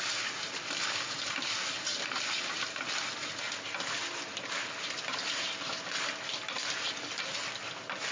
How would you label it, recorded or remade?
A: recorded